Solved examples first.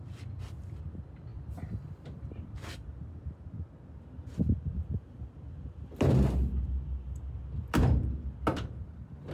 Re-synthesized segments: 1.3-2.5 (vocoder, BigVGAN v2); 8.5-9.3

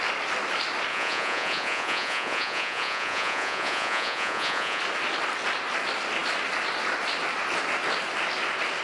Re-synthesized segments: 0.9-4.8 (vocoder, Vocos)

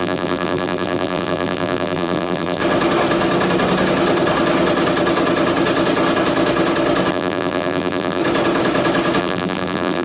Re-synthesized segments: 0.0-2.6 (vocoder, BigVGAN v2); 7.1-8.2; 9.2-10.0

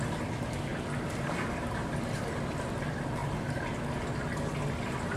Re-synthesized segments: 0.0-3.2 (vocoder, BigVGAN v2)

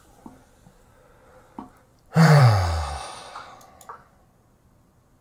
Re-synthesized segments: 1.9-2.4 (vocoder, BigVGAN v2)

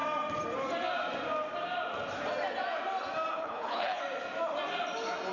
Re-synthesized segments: 3.3-4.0 (codec, HILCodec)

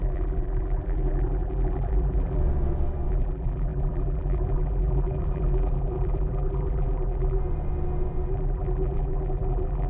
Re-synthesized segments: 0.0-2.4 (vocoder, BigVGAN v2); 3.1-7.4; 8.3-9.9